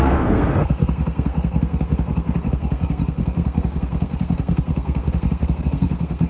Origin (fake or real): fake